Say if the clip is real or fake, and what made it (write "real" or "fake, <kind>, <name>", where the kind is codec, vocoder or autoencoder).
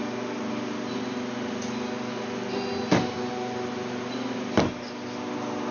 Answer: real